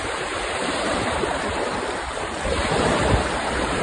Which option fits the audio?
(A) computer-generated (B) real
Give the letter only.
A